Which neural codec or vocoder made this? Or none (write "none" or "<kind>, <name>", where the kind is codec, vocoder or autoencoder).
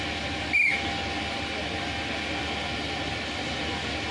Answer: none